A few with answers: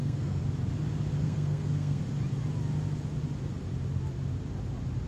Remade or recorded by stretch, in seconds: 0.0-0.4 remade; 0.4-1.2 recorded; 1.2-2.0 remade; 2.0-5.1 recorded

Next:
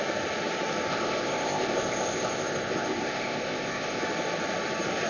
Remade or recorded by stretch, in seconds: 0.0-0.9 recorded; 0.9-4.0 remade; 4.0-5.1 recorded

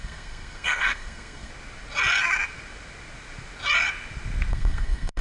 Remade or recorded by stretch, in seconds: 0.0-1.5 remade; 1.5-4.5 recorded; 4.5-5.2 remade